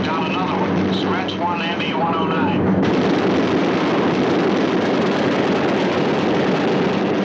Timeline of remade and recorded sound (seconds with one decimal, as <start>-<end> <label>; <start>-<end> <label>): 0.0-1.7 recorded; 1.7-2.9 remade; 2.9-7.2 recorded